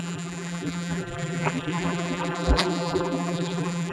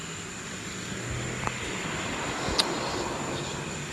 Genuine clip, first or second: second